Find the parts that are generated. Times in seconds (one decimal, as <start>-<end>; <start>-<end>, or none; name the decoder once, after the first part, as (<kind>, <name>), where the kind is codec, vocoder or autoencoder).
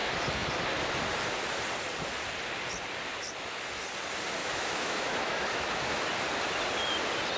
4.4-6.0 (autoencoder, DAC-VAE)